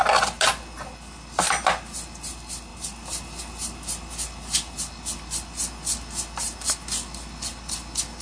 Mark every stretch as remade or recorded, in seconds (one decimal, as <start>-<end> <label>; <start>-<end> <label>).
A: 0.0-8.2 recorded

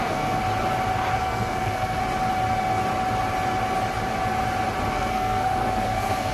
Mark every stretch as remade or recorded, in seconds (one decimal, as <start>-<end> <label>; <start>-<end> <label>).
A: 0.0-0.4 remade; 0.4-1.1 recorded; 1.1-2.0 remade; 2.0-4.9 recorded; 4.9-6.3 remade

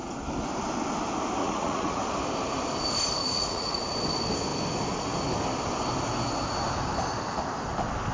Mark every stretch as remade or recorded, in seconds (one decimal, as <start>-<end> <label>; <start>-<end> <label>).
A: 0.0-1.4 recorded; 1.4-2.0 remade; 2.0-3.2 recorded; 3.2-3.8 remade; 3.8-8.1 recorded

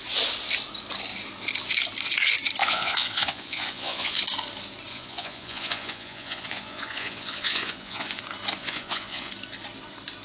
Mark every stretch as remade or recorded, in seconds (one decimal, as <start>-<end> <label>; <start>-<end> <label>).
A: 0.0-2.6 recorded; 2.6-4.2 remade; 4.2-4.9 recorded; 4.9-8.2 remade; 8.2-8.6 recorded; 8.6-9.3 remade; 9.3-10.2 recorded